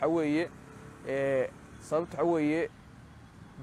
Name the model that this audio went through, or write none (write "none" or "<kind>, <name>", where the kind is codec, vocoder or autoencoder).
none